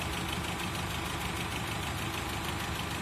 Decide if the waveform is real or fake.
real